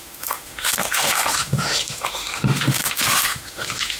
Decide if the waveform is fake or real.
fake